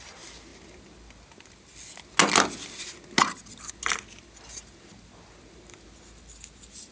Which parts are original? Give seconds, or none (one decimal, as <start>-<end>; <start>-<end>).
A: 0.0-6.9